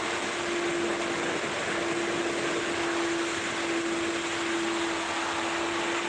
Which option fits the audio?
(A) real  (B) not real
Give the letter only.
A